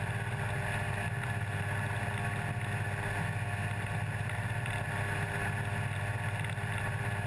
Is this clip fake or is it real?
real